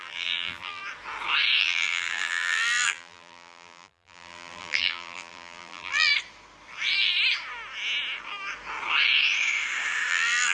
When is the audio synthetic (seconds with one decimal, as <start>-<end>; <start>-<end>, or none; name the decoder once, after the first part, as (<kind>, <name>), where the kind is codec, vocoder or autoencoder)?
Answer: 0.0-0.8 (vocoder, BigVGAN v2); 1.6-6.1; 10.1-10.5